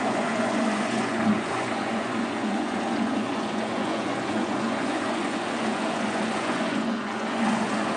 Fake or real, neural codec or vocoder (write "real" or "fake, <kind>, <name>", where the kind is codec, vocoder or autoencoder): fake, vocoder, Vocos